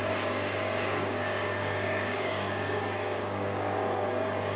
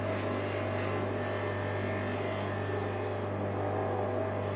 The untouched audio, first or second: second